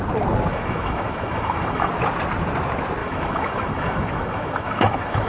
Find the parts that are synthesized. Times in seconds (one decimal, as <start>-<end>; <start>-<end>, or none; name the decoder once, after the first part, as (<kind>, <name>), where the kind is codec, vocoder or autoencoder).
0.5-1.9 (autoencoder, DAC-VAE); 3.0-5.3